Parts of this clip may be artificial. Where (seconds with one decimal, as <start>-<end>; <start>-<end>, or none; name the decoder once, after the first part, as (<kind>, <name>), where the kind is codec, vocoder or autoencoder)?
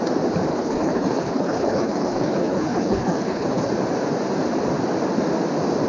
0.5-3.7 (codec, HILCodec)